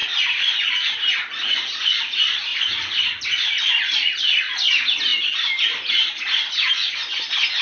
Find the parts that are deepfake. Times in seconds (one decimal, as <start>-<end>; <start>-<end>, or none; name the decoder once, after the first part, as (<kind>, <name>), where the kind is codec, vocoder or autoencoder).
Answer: 0.0-0.6 (vocoder, BigVGAN v2); 2.5-4.2